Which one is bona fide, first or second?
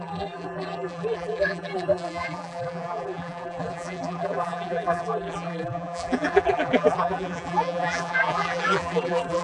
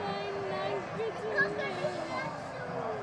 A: second